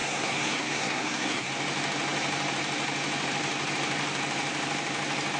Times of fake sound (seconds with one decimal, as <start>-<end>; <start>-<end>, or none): 0.0-1.5